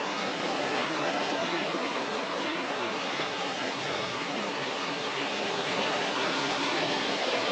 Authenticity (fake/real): fake